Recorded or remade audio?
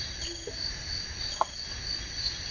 recorded